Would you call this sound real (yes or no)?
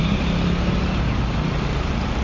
yes